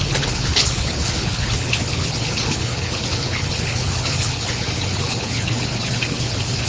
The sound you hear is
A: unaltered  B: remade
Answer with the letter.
B